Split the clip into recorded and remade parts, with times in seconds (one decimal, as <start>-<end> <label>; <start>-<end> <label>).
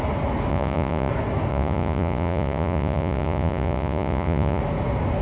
0.0-0.5 recorded; 0.5-1.1 remade; 1.1-1.5 recorded; 1.5-4.6 remade; 4.6-5.2 recorded